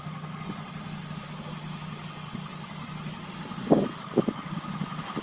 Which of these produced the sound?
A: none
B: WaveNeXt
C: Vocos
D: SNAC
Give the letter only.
A